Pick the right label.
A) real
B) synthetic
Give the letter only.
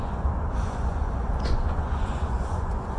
B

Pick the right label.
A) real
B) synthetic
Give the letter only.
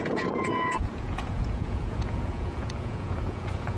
B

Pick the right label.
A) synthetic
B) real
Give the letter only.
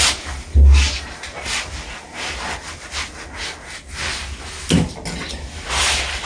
B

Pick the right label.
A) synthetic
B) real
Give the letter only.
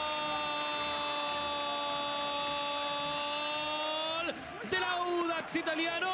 B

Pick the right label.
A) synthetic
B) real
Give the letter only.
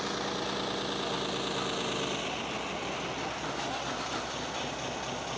B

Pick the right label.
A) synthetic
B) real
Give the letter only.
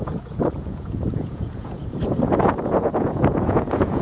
A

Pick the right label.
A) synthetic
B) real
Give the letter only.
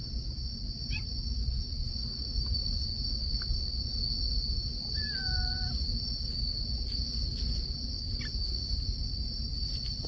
B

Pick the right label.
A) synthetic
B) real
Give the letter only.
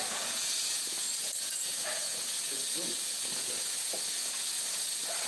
A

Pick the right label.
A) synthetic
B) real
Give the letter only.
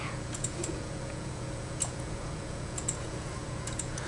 A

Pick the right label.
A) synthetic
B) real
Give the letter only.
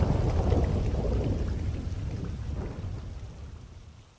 B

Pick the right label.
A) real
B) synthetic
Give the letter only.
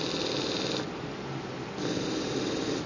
A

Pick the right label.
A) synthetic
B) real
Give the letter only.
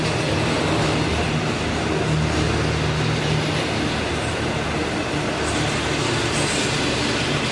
B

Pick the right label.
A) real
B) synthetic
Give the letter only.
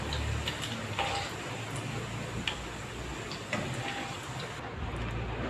A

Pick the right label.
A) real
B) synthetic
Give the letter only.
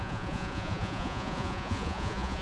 B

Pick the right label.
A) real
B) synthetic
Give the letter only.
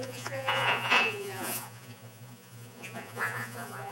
B